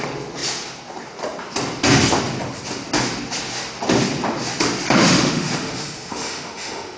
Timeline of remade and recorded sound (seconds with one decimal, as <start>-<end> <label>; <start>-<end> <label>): 0.0-5.0 recorded; 5.0-7.0 remade